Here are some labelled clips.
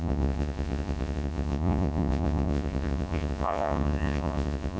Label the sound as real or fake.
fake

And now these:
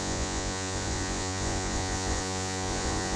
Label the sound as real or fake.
fake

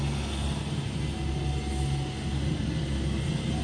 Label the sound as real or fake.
real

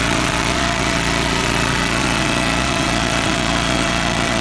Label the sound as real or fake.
fake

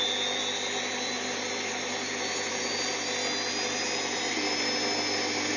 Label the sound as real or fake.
real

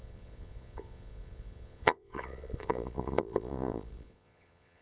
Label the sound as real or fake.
fake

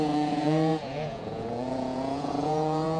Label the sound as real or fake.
fake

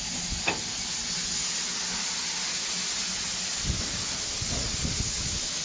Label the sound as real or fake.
real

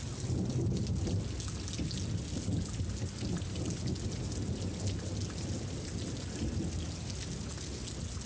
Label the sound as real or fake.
real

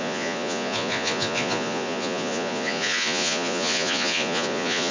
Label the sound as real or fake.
fake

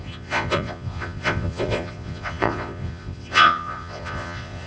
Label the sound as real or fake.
fake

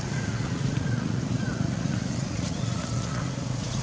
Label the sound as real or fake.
fake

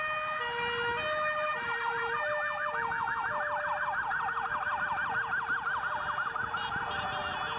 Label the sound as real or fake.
real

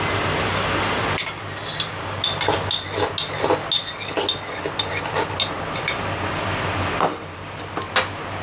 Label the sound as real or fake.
real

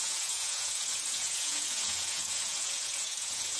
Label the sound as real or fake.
fake